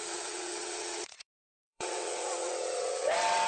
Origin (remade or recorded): remade